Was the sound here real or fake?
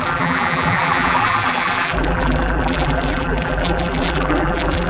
fake